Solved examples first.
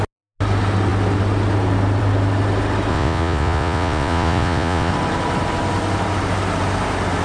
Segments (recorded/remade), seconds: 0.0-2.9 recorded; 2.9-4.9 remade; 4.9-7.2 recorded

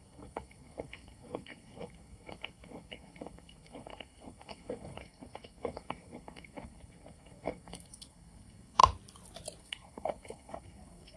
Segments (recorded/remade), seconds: 0.0-8.8 remade; 8.8-9.6 recorded; 9.6-11.2 remade

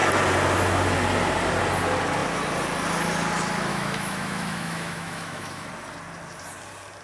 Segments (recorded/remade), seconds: 0.0-3.7 recorded; 3.7-5.7 remade; 5.7-7.0 recorded

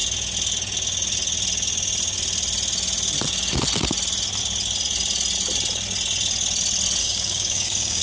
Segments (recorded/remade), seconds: 0.0-7.0 recorded; 7.0-8.0 remade